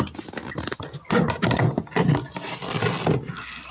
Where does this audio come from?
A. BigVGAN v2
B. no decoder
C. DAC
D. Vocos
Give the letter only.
B